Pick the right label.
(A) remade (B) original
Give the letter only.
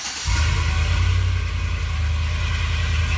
B